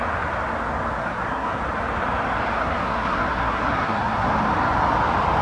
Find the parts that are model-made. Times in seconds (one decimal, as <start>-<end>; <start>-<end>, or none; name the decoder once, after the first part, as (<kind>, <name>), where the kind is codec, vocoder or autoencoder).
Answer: 1.0-1.6 (codec, SNAC); 2.6-4.3